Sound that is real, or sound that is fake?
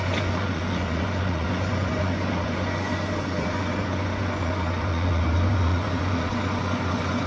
fake